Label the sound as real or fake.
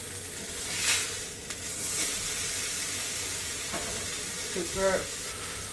real